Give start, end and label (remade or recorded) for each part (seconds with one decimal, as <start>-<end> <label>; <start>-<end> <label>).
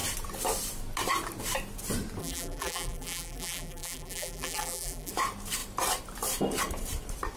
0.0-2.2 recorded; 2.2-5.1 remade; 5.1-7.4 recorded